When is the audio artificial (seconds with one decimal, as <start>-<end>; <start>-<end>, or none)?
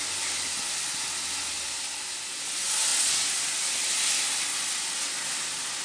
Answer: none